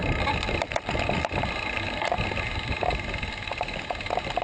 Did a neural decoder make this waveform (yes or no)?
no